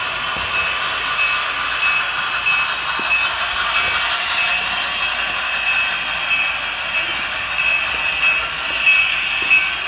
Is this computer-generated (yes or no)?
no